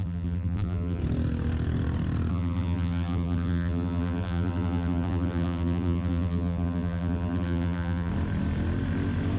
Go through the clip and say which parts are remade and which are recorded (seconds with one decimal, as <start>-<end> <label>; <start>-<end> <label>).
0.0-1.0 remade; 1.0-2.3 recorded; 2.3-8.1 remade; 8.1-9.4 recorded